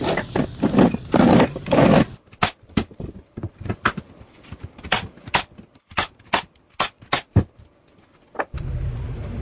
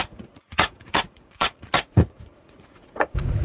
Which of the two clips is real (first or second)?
first